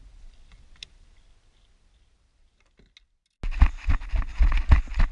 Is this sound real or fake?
real